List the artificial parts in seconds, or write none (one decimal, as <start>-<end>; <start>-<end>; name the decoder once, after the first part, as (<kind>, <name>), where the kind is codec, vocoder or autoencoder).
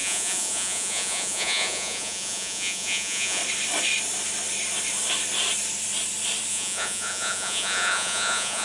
0.0-3.4 (vocoder, Vocos); 6.5-8.6